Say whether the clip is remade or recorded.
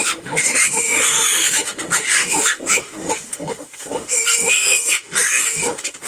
remade